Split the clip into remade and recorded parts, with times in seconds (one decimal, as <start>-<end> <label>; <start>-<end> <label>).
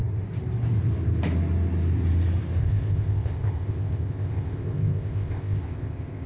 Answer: 0.0-2.6 recorded; 2.6-6.3 remade